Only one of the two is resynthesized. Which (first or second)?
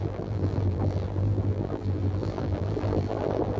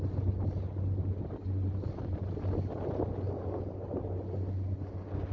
first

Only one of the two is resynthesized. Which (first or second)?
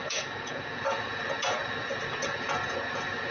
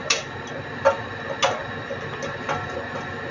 first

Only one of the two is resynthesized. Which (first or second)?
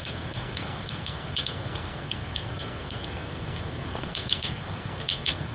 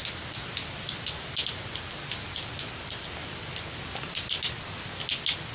first